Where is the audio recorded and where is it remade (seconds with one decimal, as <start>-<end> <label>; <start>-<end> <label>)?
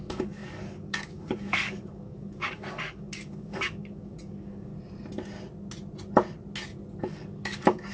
0.0-4.7 remade; 4.7-7.0 recorded; 7.0-7.9 remade